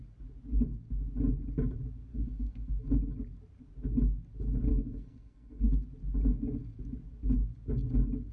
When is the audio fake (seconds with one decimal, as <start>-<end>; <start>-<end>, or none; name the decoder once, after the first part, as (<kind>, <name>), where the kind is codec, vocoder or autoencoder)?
2.1-2.9 (codec, SNAC); 4.7-5.6